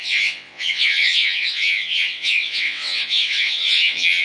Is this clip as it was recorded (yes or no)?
no